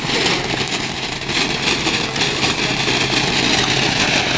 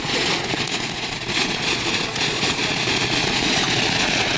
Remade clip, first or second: second